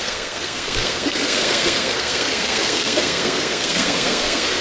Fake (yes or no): yes